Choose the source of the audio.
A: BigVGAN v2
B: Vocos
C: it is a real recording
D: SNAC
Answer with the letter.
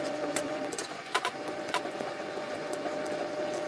B